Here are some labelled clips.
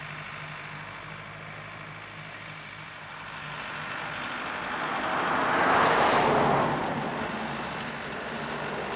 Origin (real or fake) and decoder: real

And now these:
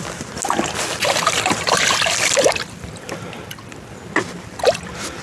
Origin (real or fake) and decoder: real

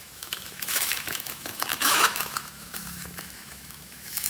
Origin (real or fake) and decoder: fake, autoencoder, DAC-VAE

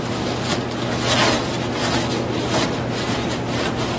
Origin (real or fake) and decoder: real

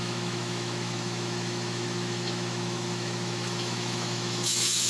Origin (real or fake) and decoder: fake, autoencoder, DAC-VAE